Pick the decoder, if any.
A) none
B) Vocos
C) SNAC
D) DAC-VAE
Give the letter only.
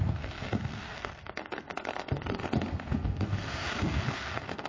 C